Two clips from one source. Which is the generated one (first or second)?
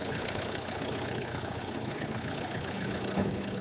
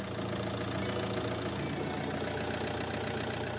first